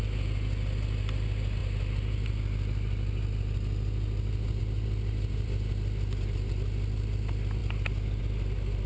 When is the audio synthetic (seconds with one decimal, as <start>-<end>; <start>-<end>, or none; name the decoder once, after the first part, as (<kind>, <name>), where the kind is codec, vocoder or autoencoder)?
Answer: none